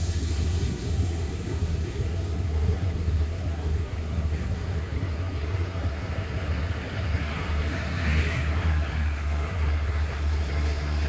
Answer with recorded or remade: remade